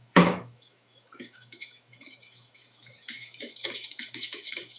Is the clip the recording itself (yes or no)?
no